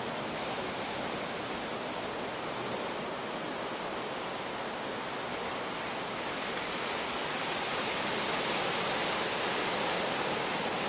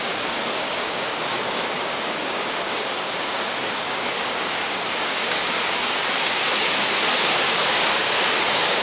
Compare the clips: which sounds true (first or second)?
first